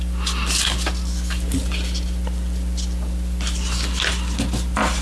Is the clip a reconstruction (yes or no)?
no